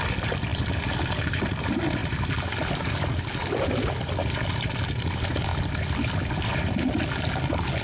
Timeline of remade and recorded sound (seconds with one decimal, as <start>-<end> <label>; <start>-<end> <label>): 0.0-0.5 recorded; 0.5-1.1 remade; 1.1-2.0 recorded; 2.0-2.9 remade; 2.9-5.5 recorded; 5.5-7.0 remade; 7.0-7.8 recorded